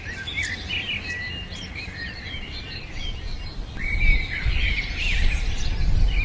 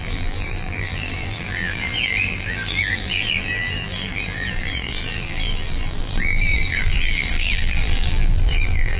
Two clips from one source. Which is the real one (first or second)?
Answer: first